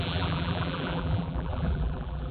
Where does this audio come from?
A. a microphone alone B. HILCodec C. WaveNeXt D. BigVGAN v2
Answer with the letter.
D